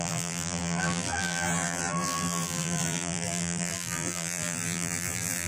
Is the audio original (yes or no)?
no